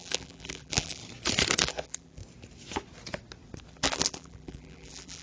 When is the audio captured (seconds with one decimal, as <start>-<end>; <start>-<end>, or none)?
1.0-1.6; 2.2-3.7